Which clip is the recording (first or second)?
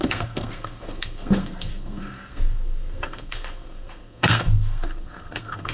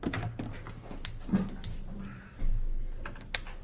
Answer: second